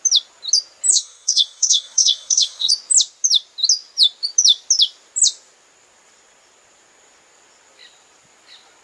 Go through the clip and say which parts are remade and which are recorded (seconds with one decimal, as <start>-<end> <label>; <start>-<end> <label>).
0.0-0.9 recorded; 0.9-2.7 remade; 2.7-8.8 recorded